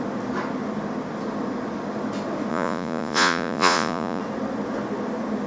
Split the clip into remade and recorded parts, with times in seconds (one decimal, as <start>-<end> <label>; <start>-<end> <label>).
0.0-2.5 recorded; 2.5-4.2 remade; 4.2-5.5 recorded